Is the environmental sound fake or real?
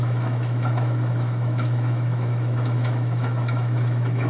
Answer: fake